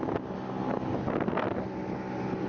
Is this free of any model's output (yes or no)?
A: yes